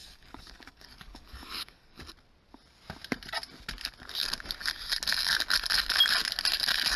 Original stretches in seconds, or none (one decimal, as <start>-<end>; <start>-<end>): 2.0-7.0